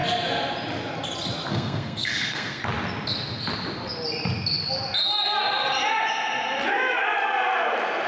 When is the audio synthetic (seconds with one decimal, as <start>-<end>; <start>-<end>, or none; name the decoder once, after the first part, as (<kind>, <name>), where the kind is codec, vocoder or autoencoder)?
1.5-2.6 (codec, SNAC)